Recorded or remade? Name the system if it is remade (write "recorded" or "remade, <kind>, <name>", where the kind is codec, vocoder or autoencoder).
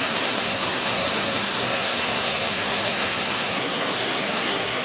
remade, codec, SNAC